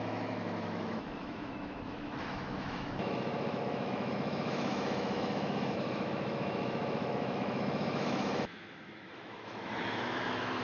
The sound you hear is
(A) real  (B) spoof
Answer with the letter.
B